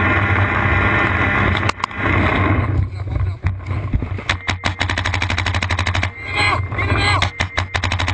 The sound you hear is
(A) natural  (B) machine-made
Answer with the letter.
A